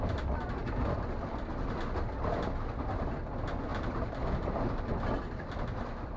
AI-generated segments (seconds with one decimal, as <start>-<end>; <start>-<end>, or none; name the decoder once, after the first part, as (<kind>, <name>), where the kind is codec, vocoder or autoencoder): 3.7-4.6 (vocoder, BigVGAN v2)